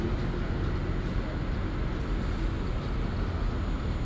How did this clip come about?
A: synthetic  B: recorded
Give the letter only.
B